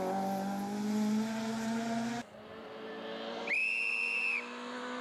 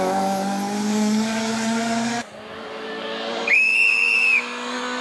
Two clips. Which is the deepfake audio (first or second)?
second